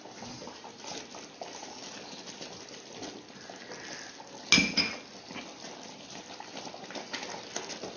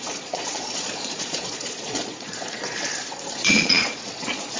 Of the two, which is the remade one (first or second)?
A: second